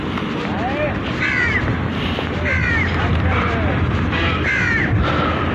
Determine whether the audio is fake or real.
fake